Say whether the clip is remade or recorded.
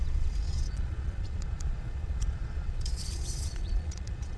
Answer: remade